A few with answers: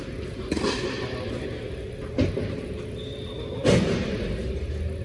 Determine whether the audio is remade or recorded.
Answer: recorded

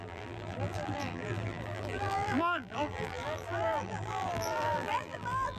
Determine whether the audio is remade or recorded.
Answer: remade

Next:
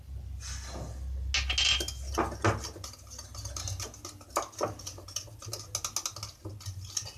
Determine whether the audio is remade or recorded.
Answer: recorded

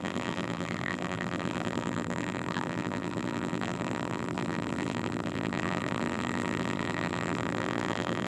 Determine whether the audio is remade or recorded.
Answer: remade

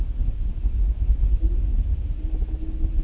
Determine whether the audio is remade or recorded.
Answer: recorded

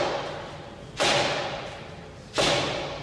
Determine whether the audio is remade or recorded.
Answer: recorded